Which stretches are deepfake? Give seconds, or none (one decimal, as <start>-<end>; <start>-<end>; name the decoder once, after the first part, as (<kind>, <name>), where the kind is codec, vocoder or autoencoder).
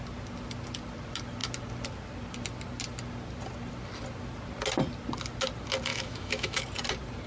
5.9-6.6 (autoencoder, DAC-VAE)